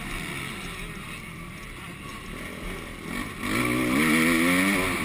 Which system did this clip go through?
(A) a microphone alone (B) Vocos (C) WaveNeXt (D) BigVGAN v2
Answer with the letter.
A